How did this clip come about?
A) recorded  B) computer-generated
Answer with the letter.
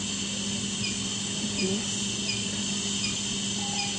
A